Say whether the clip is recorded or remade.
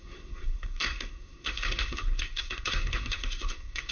remade